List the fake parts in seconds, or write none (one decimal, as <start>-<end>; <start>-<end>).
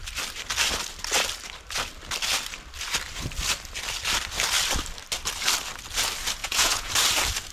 6.4-6.9